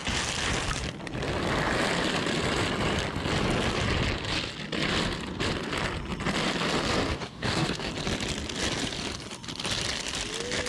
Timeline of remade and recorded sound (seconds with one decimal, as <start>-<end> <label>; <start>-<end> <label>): 0.0-7.1 recorded; 7.1-7.9 remade; 7.9-10.7 recorded